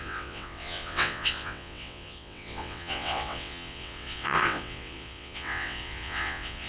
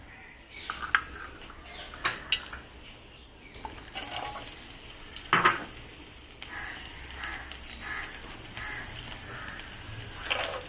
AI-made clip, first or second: first